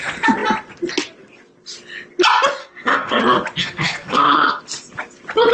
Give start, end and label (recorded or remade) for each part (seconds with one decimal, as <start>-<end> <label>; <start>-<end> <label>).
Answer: 0.0-2.6 recorded; 2.6-3.2 remade; 3.2-3.6 recorded; 3.6-4.6 remade; 4.6-5.5 recorded